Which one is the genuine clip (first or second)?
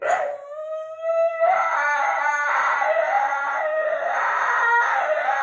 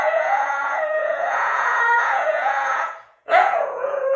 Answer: first